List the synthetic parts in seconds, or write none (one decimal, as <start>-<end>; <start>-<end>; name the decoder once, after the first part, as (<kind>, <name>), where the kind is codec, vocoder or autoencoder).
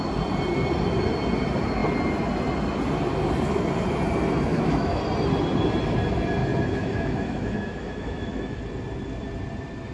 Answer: 4.5-5.0 (autoencoder, DAC-VAE); 6.4-8.6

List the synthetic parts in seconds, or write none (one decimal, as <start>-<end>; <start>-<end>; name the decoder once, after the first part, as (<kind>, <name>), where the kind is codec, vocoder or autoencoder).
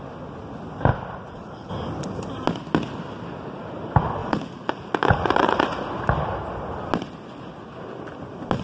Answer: 0.9-1.7 (vocoder, Vocos); 4.2-5.9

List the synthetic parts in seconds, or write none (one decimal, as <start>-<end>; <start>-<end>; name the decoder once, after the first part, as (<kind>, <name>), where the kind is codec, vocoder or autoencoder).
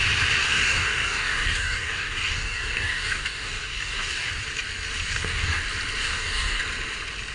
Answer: 0.4-4.3 (codec, DAC); 5.1-5.6; 6.0-6.6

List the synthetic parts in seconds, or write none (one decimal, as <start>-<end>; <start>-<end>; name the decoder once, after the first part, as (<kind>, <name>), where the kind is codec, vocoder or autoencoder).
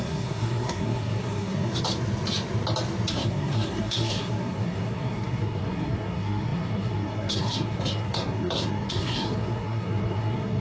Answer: 0.0-1.7 (codec, SNAC); 3.1-10.6